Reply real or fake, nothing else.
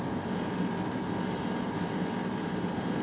real